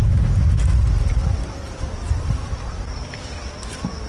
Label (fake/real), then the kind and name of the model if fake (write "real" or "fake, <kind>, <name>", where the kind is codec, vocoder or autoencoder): real